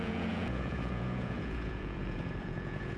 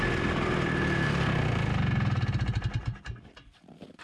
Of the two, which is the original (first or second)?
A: second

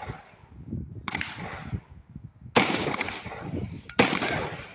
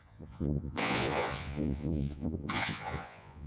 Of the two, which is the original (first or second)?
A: first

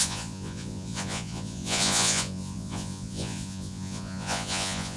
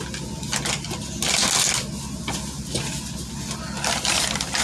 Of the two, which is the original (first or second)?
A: second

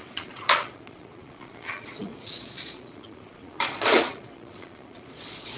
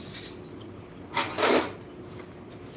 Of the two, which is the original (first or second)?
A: second